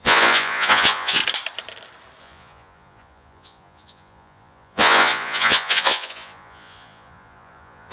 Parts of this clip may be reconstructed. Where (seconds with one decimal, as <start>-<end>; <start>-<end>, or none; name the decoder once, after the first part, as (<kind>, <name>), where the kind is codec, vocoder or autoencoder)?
0.0-1.2 (vocoder, Vocos); 2.2-7.9